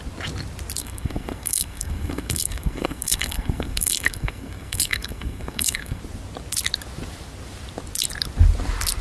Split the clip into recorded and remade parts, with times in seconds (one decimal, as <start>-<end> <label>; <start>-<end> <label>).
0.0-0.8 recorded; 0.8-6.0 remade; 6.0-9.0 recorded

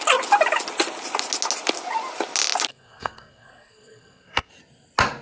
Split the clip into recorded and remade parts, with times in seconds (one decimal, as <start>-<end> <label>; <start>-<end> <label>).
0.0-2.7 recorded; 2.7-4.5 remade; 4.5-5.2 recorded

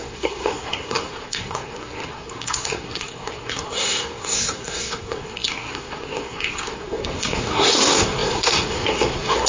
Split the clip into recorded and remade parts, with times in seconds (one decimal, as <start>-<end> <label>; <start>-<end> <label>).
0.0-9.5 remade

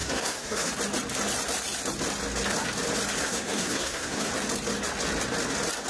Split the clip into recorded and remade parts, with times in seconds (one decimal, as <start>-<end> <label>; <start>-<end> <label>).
0.0-0.7 remade; 0.7-3.2 recorded; 3.2-4.3 remade; 4.3-5.9 recorded

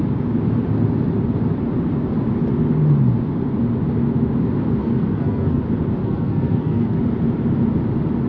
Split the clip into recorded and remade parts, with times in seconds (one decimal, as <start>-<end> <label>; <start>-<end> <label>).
0.0-4.8 recorded; 4.8-5.6 remade; 5.6-6.0 recorded; 6.0-7.0 remade; 7.0-8.3 recorded